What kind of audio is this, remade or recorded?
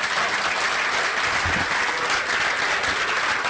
recorded